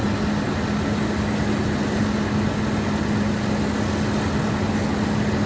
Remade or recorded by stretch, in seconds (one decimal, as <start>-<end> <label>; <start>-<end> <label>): 0.0-5.5 recorded